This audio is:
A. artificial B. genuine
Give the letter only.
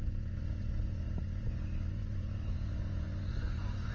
A